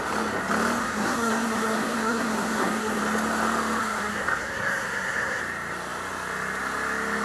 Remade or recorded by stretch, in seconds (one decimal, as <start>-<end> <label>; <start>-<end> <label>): 0.0-0.8 recorded; 0.8-3.0 remade; 3.0-3.8 recorded; 3.8-5.4 remade; 5.4-7.2 recorded